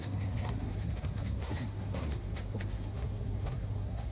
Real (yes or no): no